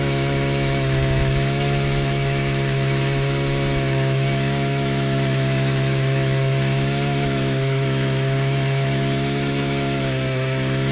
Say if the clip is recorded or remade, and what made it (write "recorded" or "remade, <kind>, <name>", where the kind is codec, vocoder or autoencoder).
remade, autoencoder, DAC-VAE